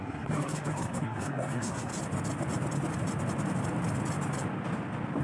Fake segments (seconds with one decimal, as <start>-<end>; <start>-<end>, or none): 0.0-1.9